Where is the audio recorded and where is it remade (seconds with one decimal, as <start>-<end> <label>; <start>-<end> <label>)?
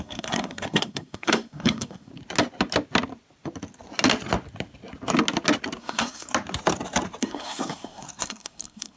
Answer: 0.0-2.1 remade; 2.1-5.8 recorded; 5.8-6.3 remade; 6.3-7.2 recorded; 7.2-9.0 remade